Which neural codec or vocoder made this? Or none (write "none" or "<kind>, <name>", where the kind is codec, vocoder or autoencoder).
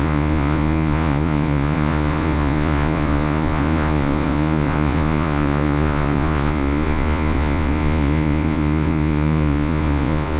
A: vocoder, Vocos